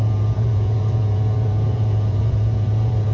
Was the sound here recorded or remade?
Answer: remade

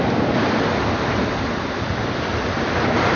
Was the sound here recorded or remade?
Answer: recorded